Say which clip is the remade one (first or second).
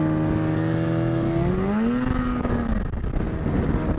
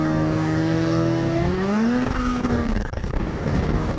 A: second